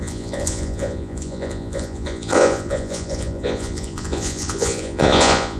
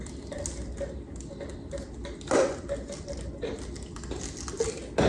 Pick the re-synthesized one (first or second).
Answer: first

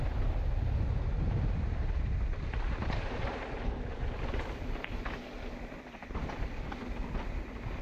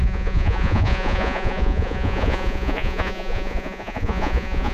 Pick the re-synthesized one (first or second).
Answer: second